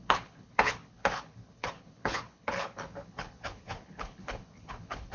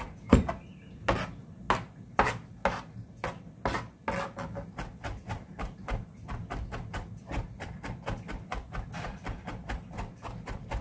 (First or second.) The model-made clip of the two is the first